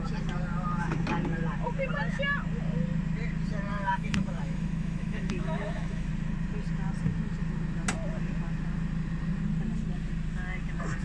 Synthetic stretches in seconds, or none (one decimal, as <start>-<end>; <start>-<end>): 3.7-6.1

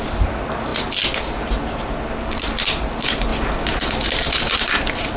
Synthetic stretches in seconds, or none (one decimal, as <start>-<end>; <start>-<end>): none

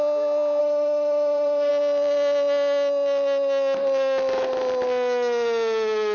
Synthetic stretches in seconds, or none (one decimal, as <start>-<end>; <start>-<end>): 0.6-1.7

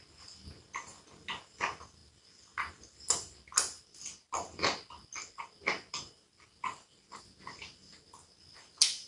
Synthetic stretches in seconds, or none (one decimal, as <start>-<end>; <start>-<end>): none

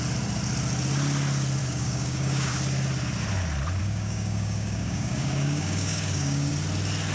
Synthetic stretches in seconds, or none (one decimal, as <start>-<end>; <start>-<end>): 1.6-2.5; 3.8-6.5

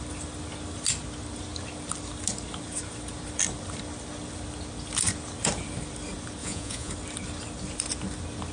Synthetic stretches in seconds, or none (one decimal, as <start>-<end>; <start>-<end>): 6.4-6.9